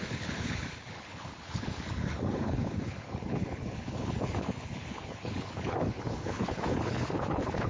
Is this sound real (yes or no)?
no